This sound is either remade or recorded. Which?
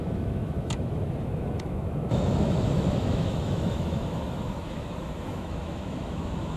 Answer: remade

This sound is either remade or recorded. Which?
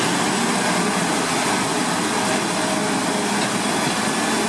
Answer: recorded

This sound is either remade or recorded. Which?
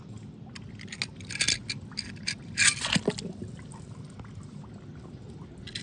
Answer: recorded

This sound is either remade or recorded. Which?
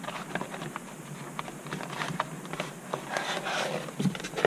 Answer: recorded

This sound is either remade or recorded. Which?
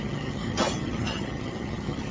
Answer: remade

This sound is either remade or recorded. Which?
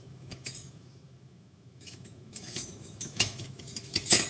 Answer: remade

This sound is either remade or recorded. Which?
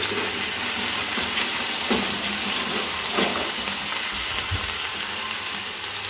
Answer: recorded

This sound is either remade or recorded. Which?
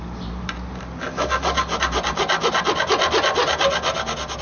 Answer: recorded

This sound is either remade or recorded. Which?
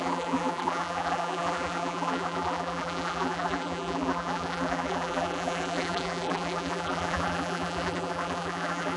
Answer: remade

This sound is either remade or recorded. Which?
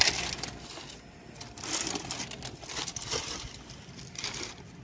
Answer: recorded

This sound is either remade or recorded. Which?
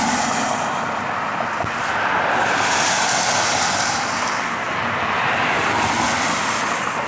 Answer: recorded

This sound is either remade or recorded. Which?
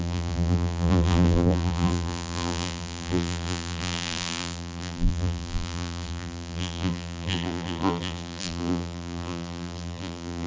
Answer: remade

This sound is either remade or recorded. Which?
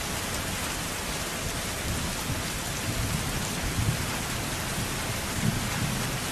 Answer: recorded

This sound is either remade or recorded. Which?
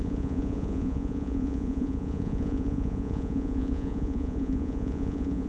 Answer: remade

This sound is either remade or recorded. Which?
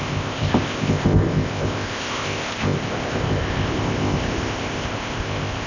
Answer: remade